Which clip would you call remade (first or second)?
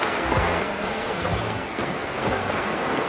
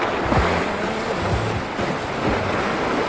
first